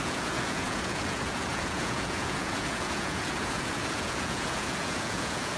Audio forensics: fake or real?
fake